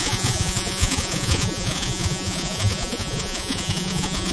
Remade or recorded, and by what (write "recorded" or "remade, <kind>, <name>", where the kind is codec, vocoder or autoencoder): remade, vocoder, Vocos